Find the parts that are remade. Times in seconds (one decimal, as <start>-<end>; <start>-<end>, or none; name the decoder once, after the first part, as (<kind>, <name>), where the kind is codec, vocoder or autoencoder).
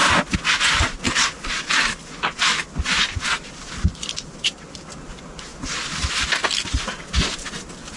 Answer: none